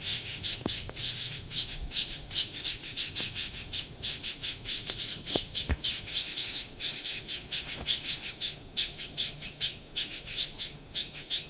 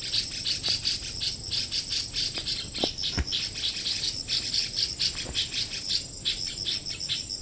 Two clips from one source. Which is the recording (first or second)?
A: second